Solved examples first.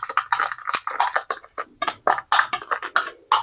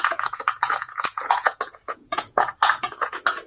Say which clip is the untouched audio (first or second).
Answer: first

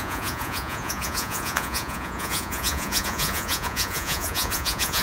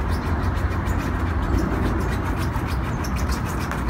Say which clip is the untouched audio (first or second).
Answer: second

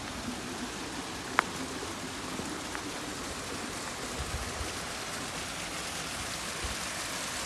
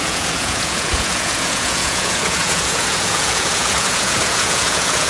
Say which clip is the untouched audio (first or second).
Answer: first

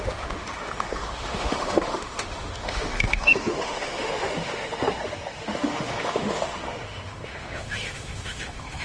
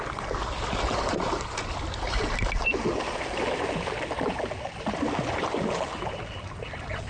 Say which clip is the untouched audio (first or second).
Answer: second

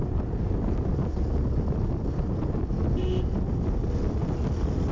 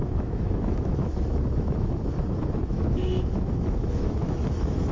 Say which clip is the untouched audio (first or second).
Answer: first